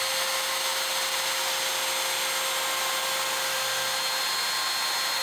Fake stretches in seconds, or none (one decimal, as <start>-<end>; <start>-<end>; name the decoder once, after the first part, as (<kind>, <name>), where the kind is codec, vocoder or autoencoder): none